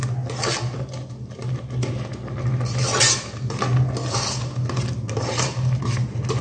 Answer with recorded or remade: recorded